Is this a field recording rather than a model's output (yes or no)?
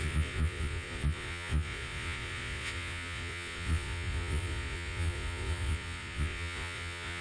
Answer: no